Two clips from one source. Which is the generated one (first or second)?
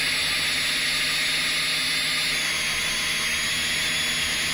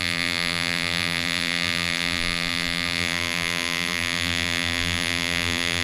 second